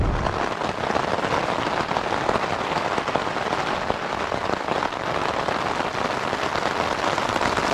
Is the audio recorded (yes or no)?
yes